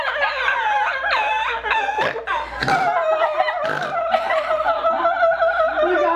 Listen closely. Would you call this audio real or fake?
real